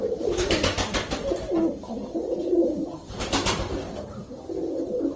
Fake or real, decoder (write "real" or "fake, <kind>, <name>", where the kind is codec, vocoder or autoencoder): real